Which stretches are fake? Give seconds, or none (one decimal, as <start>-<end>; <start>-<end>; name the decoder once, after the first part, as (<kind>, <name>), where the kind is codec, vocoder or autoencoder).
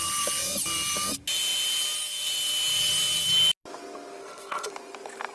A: 4.2-4.7 (codec, SNAC)